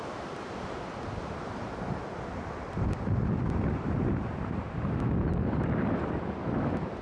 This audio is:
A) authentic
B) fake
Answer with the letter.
A